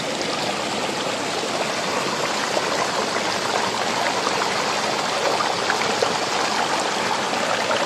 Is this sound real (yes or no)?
yes